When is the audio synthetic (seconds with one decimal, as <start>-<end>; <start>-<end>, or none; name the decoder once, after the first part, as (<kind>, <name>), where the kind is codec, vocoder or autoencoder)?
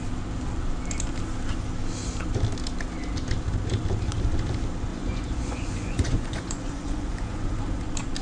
4.9-7.6 (vocoder, Vocos)